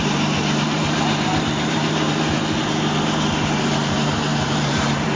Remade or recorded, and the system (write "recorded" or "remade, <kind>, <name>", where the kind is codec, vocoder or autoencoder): remade, vocoder, BigVGAN v2